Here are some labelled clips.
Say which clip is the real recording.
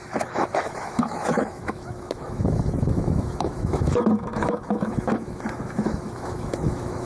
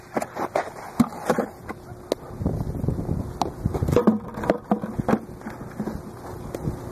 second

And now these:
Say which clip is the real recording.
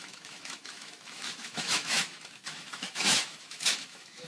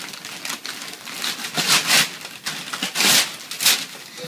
second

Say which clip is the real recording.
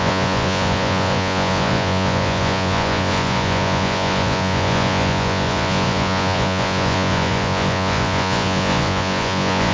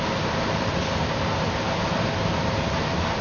second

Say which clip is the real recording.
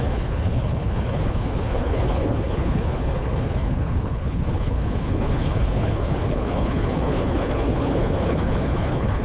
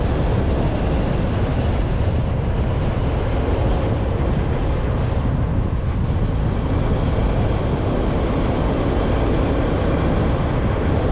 second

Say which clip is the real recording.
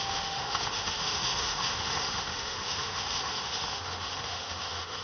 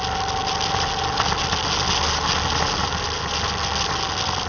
second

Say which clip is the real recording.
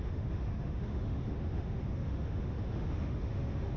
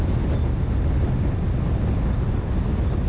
second